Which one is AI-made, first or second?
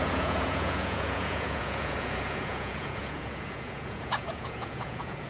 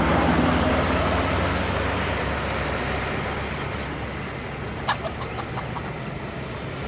first